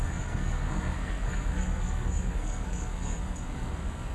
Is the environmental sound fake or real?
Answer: fake